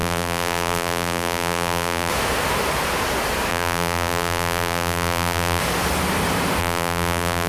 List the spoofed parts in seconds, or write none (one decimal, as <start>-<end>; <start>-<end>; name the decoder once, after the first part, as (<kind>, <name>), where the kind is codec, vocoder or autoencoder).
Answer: 0.0-2.1 (vocoder, BigVGAN v2); 3.5-5.6; 6.6-7.5